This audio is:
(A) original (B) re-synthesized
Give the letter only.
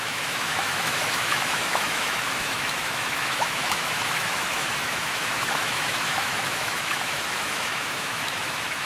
B